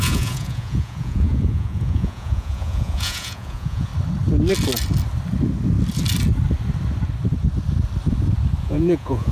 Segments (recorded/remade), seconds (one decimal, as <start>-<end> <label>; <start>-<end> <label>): 0.0-3.9 remade; 3.9-8.6 recorded; 8.6-9.3 remade